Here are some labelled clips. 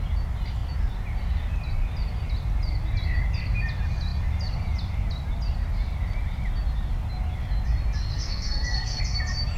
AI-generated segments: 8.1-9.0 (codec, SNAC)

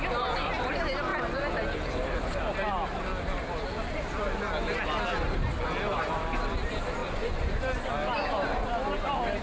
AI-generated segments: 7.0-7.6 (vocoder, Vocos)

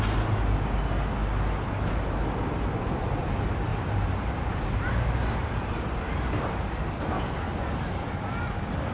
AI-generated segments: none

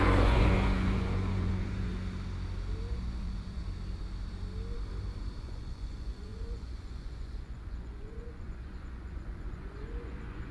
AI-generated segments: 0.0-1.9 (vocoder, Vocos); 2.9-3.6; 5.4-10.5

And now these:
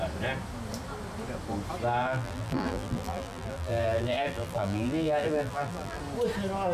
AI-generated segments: 2.0-6.0 (vocoder, BigVGAN v2)